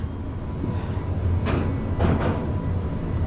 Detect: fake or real real